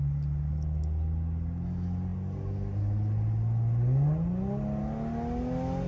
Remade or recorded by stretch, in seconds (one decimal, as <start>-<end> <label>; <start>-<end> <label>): 0.0-5.9 recorded